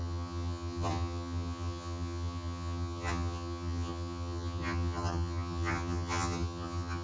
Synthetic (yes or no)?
yes